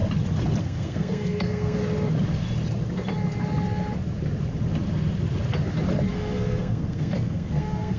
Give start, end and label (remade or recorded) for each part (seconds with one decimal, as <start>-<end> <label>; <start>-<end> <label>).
0.0-0.6 recorded; 0.6-1.8 remade; 1.8-6.1 recorded; 6.1-8.0 remade